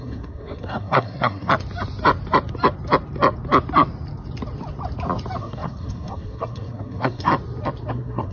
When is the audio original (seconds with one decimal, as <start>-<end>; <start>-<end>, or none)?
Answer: 1.5-5.4; 7.3-7.9